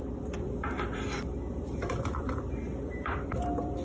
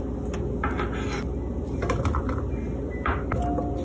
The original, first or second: second